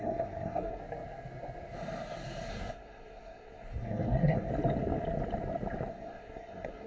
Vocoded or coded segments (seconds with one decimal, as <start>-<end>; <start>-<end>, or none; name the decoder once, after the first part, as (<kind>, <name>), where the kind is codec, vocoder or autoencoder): 0.0-0.8 (codec, SNAC); 2.5-4.5; 5.9-6.9